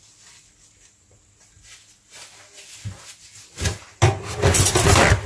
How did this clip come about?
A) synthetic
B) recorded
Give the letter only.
B